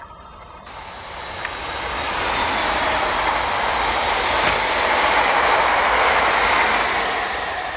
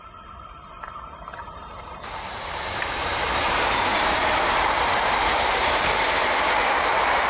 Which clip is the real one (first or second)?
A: first